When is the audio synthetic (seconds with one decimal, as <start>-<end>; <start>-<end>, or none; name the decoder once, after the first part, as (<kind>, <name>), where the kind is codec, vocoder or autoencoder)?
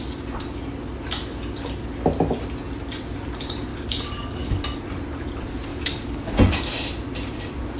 3.7-4.6 (codec, DAC); 5.7-6.3